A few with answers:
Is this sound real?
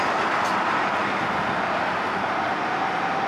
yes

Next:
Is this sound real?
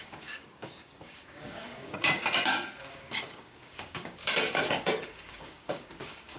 no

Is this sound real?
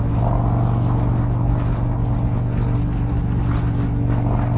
yes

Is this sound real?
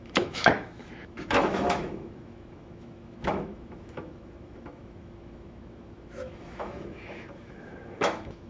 no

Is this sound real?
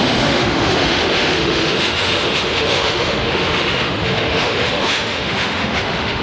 no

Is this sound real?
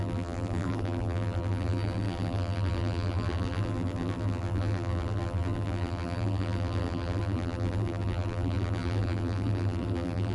no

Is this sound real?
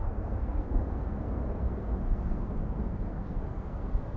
no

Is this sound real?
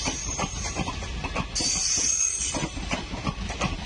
yes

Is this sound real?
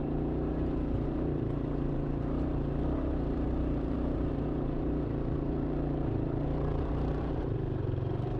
no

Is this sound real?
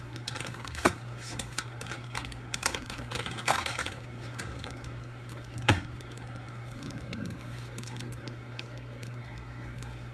no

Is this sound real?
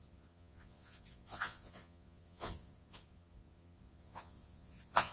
no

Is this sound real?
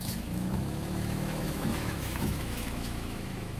no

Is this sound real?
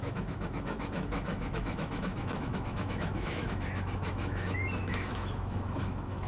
no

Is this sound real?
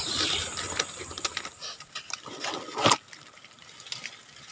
yes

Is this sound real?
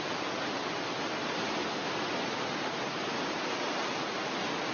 yes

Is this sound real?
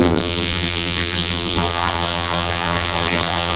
no